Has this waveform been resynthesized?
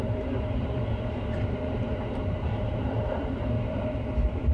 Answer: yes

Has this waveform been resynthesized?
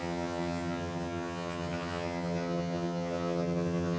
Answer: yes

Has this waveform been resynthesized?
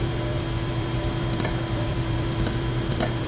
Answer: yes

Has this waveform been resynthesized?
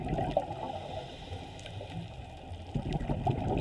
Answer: no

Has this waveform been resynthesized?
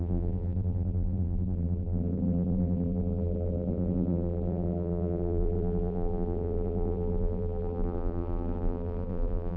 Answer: yes